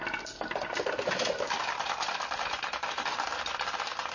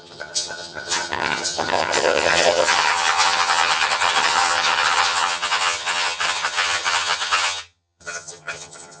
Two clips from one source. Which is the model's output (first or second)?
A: second